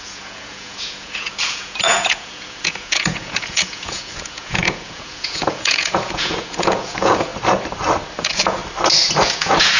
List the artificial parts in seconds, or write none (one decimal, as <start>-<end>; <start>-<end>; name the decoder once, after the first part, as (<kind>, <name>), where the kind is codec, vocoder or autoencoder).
0.0-7.3 (vocoder, Vocos); 8.2-8.6; 9.2-9.8